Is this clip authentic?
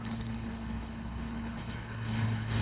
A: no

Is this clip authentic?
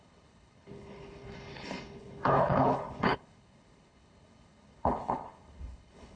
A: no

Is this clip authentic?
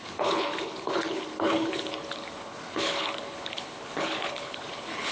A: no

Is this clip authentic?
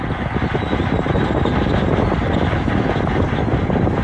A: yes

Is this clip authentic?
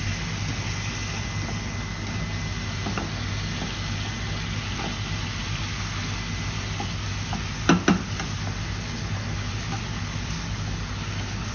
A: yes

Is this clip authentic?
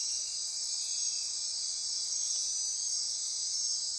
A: yes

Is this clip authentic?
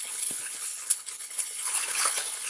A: no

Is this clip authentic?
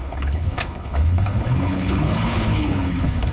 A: no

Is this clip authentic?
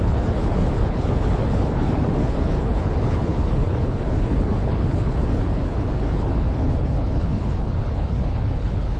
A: no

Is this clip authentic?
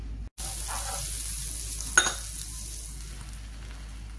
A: yes